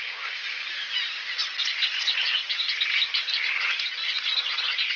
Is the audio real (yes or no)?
yes